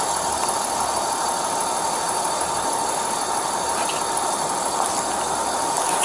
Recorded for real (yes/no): yes